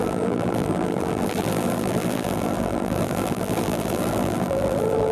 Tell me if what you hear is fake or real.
fake